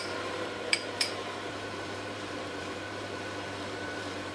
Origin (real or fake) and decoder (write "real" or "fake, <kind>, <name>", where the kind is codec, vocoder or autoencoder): fake, vocoder, BigVGAN v2